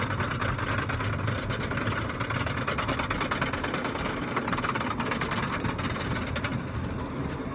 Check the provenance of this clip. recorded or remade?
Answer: recorded